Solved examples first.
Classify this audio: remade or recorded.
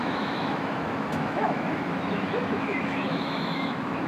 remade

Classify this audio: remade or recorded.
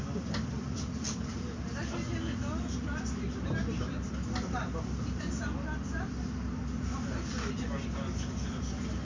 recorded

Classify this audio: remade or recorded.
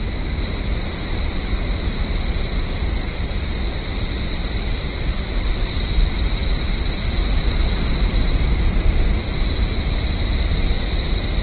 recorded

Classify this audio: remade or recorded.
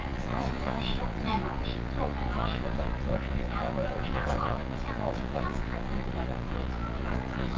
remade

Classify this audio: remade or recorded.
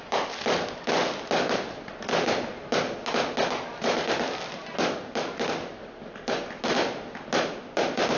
recorded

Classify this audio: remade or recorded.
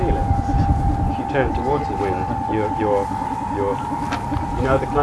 recorded